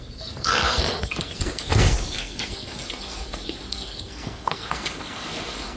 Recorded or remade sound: remade